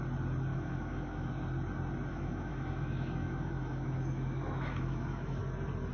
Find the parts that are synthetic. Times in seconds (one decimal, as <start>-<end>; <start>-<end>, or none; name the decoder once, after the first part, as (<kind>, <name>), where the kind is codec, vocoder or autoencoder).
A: 0.5-1.3 (autoencoder, DAC-VAE); 2.1-5.4